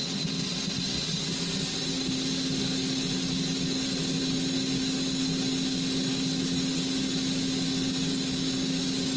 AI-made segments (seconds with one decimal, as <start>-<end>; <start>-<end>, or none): none